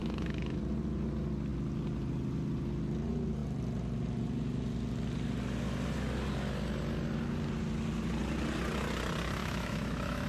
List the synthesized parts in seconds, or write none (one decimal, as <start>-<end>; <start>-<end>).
0.0-0.6; 9.4-10.3